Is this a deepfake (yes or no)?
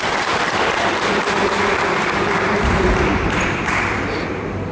yes